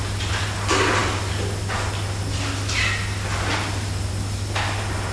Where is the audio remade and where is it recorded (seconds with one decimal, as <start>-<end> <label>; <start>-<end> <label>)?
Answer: 0.0-5.1 recorded